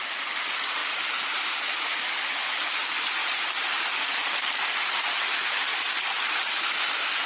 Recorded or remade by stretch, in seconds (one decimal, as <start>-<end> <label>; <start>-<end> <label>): 0.0-0.8 recorded; 0.8-1.5 remade; 1.5-3.2 recorded; 3.2-3.8 remade; 3.8-7.3 recorded